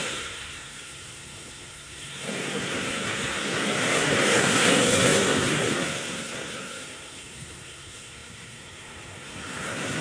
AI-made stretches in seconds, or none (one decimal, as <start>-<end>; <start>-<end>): 0.0-10.0